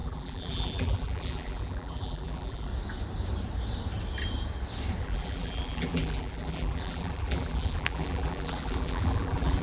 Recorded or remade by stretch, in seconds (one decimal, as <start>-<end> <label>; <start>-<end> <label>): 0.0-2.7 remade; 2.7-5.0 recorded; 5.0-9.6 remade